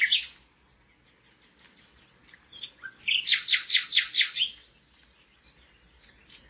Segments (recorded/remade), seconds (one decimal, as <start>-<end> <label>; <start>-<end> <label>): 0.0-6.5 recorded